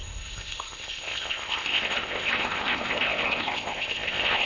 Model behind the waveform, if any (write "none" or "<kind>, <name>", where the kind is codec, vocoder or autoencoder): codec, ZipCodec